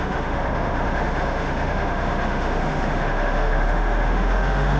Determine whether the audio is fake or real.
fake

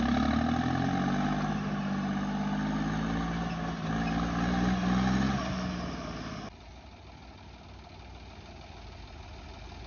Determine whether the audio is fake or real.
real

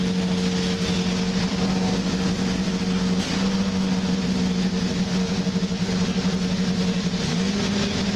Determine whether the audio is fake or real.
real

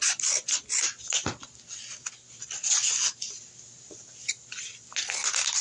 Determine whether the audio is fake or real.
real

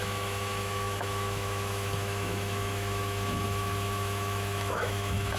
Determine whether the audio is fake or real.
fake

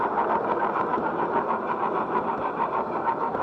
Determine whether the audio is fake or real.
real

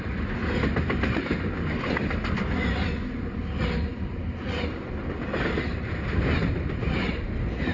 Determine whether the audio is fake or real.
real